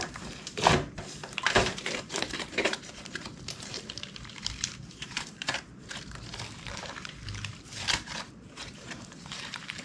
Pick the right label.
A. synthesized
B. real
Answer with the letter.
A